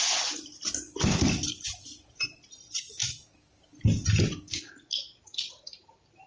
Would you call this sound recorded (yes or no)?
yes